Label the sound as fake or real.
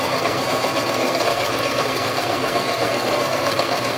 fake